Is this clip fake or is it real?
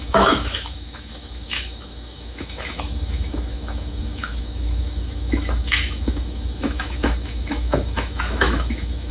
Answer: fake